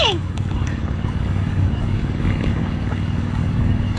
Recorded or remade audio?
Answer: remade